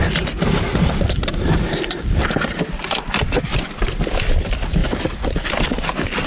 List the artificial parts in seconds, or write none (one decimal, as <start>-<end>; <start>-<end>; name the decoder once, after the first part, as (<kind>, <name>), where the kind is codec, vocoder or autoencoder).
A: none